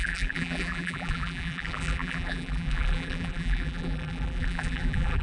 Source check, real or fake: fake